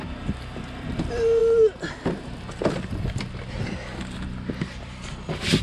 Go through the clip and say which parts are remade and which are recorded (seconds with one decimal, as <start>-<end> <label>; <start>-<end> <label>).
0.0-5.6 recorded